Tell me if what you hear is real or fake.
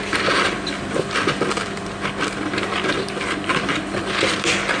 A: real